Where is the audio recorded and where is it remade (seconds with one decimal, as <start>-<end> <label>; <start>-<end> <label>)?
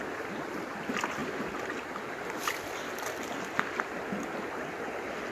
0.0-5.3 recorded